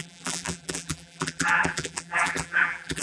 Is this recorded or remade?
remade